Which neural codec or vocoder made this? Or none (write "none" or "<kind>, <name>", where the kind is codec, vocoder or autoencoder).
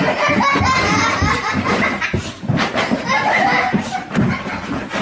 vocoder, BigVGAN v2